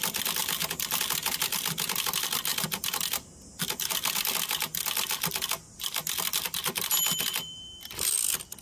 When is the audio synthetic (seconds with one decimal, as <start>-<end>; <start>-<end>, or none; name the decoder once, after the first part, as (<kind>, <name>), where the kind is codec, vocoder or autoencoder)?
none